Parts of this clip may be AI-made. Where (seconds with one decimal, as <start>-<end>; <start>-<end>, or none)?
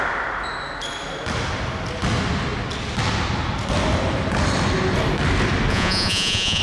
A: 5.7-6.6